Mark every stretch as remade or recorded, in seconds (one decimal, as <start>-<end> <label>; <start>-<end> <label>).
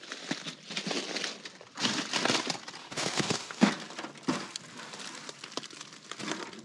0.0-2.8 recorded; 2.8-3.7 remade; 3.7-6.6 recorded